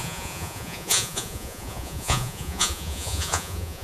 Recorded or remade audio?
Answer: remade